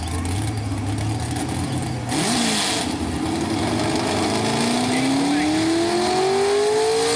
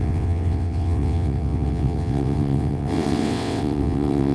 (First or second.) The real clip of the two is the first